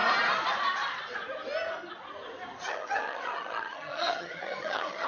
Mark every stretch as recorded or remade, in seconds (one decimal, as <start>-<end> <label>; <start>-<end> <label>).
0.0-2.6 recorded; 2.6-5.1 remade